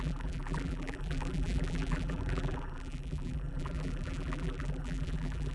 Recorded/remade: remade